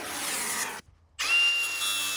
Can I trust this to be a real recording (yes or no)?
yes